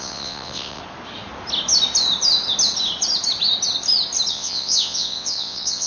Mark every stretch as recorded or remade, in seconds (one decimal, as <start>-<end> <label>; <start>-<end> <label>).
0.0-0.8 remade; 0.8-4.3 recorded; 4.3-5.9 remade